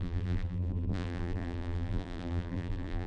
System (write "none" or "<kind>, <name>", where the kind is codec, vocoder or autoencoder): vocoder, BigVGAN v2